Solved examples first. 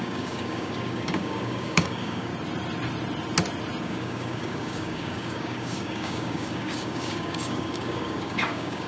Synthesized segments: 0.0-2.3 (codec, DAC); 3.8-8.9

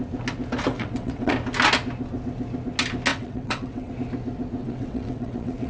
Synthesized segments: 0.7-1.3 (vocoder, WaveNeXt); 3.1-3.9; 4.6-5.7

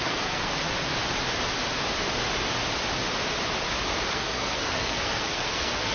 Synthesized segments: 0.0-0.6 (codec, SNAC); 4.1-5.9

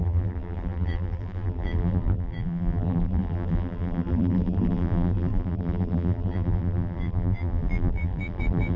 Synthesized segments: 0.0-8.8 (vocoder, BigVGAN v2)

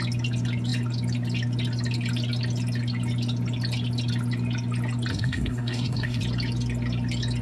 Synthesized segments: 5.1-6.2 (codec, SNAC)

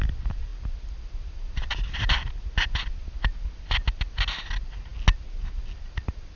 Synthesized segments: none

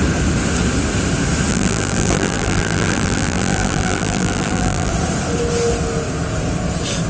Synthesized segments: 1.5-4.9 (vocoder, BigVGAN v2)